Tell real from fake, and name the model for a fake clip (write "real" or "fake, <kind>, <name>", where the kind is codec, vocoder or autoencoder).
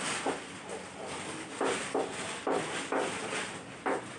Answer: real